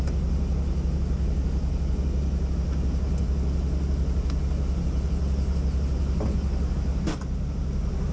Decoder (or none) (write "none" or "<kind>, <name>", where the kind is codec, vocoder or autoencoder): none